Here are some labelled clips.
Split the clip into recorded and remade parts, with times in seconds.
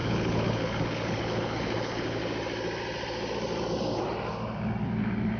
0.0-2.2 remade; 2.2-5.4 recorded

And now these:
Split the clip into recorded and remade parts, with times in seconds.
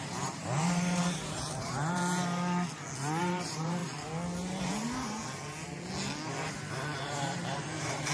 0.0-2.0 remade; 2.0-3.2 recorded; 3.2-3.8 remade; 3.8-4.6 recorded; 4.6-5.2 remade; 5.2-6.7 recorded; 6.7-8.1 remade